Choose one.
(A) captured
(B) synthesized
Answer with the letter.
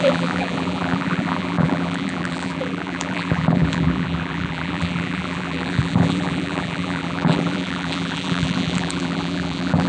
B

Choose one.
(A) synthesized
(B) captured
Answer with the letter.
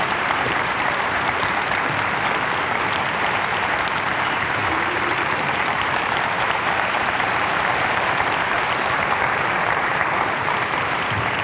A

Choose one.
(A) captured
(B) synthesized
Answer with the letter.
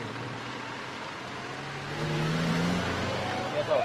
A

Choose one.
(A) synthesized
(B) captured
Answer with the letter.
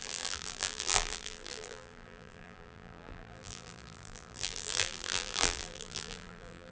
A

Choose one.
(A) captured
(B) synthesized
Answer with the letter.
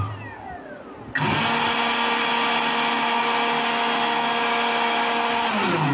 A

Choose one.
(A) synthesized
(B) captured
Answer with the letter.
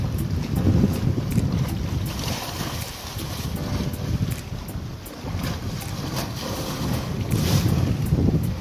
B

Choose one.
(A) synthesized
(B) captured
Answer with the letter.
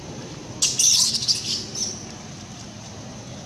B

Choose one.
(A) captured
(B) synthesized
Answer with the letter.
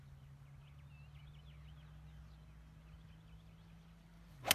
A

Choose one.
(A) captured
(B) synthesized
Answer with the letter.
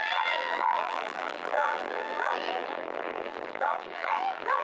B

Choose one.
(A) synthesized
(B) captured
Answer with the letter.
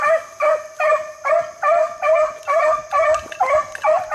B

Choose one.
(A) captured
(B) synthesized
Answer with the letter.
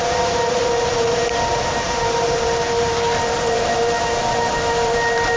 B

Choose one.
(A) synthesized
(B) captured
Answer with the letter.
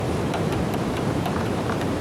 A